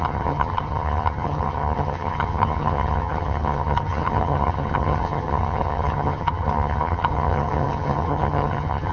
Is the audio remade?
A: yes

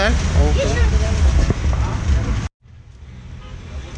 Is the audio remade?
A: no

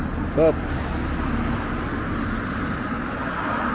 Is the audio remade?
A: no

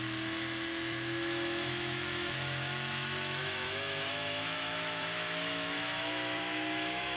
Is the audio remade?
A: yes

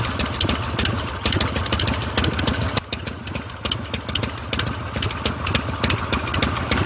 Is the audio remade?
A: no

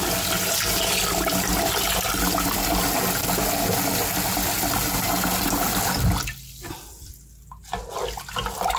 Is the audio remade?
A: no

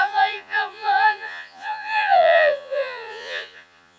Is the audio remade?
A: yes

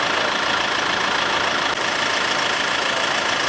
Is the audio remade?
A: no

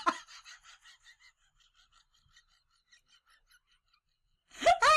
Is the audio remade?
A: no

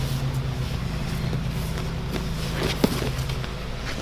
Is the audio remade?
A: no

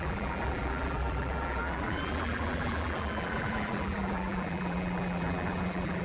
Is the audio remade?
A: yes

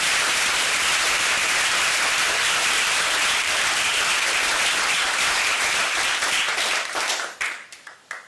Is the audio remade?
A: yes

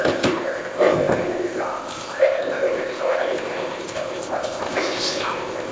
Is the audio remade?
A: yes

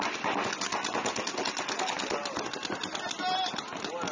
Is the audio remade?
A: no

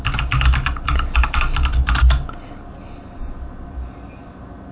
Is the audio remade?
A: no